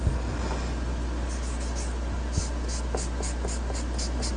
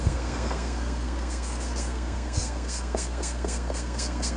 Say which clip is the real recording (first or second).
first